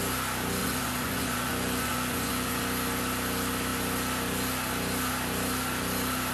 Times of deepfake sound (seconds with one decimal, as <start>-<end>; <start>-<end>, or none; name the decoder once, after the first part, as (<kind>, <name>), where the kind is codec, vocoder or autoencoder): 0.6-2.6 (vocoder, Vocos)